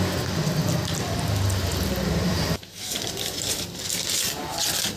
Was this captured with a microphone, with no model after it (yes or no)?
yes